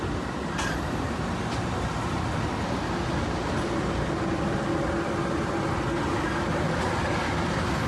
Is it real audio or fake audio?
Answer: real